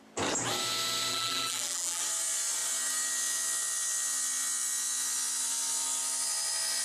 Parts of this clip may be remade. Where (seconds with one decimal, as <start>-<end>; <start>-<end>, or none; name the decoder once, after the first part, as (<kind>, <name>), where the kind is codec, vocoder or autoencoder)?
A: 1.1-2.0 (vocoder, BigVGAN v2)